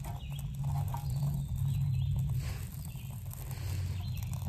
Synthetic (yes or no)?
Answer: no